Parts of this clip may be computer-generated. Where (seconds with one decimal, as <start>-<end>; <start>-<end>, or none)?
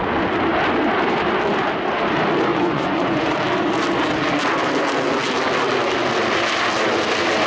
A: 2.5-3.3